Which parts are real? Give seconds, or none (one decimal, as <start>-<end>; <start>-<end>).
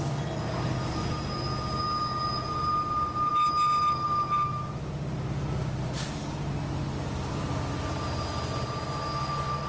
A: 0.0-9.7